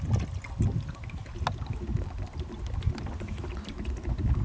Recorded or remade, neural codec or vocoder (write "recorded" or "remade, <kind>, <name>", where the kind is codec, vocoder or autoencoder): recorded